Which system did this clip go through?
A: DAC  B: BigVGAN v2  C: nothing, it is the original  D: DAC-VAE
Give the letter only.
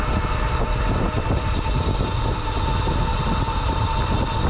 C